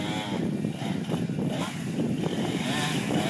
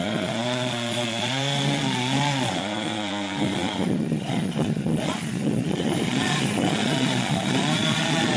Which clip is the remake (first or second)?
second